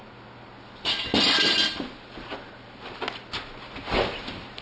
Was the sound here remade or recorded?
recorded